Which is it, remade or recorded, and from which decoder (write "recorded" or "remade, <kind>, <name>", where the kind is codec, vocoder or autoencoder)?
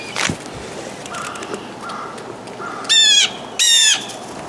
recorded